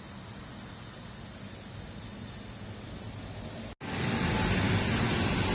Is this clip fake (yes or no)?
no